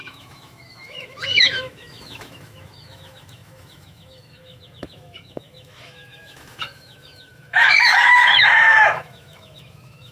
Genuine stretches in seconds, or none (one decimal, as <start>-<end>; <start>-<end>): none